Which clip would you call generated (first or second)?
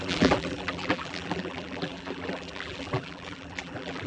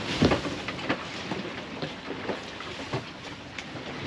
first